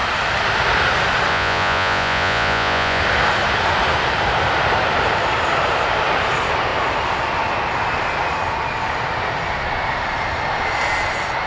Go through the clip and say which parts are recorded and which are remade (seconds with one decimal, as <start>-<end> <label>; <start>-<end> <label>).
0.0-1.3 recorded; 1.3-3.0 remade; 3.0-11.5 recorded